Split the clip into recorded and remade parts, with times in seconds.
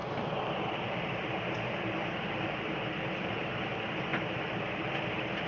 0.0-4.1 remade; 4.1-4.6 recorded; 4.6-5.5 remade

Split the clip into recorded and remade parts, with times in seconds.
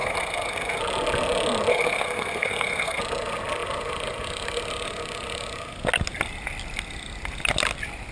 0.0-0.8 remade; 0.8-1.7 recorded; 1.7-3.0 remade; 3.0-8.1 recorded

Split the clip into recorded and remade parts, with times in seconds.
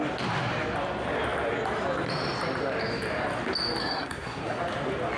0.0-3.8 recorded; 3.8-4.6 remade; 4.6-5.2 recorded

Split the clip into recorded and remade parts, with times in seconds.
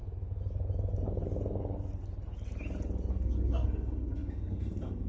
0.0-3.1 recorded; 3.1-5.1 remade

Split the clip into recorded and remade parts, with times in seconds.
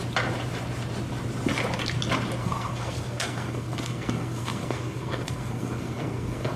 0.0-2.4 recorded; 2.4-6.6 remade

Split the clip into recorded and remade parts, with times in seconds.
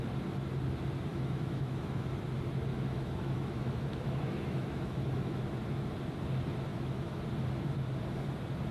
0.0-1.1 recorded; 1.1-2.1 remade; 2.1-2.7 recorded; 2.7-5.4 remade; 5.4-6.7 recorded; 6.7-7.2 remade; 7.2-8.7 recorded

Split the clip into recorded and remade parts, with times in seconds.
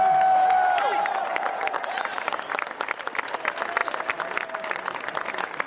0.0-1.3 recorded; 1.3-2.6 remade; 2.6-5.7 recorded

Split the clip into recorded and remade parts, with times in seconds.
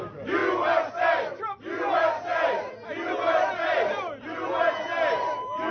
0.0-5.7 recorded